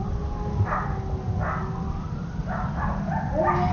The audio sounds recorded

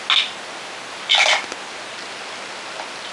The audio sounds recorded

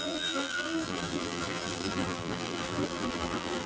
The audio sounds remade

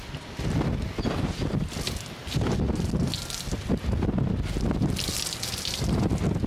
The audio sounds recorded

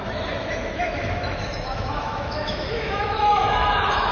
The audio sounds remade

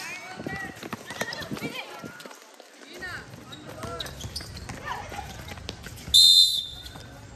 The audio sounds recorded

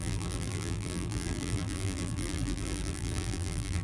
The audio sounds remade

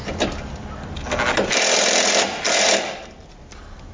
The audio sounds recorded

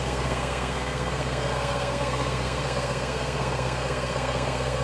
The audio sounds remade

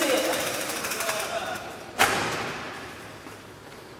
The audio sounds remade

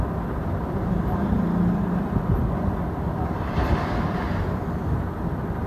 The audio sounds recorded